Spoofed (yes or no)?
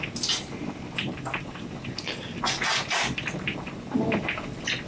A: no